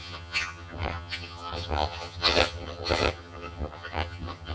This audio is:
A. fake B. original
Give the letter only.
A